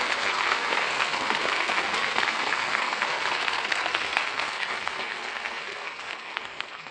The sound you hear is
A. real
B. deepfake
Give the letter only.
B